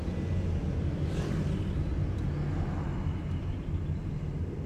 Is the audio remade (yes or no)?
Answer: no